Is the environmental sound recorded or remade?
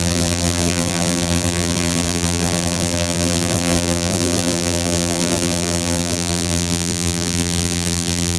remade